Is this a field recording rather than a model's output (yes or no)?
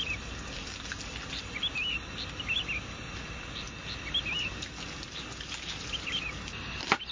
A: yes